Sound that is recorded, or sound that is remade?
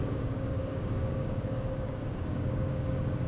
remade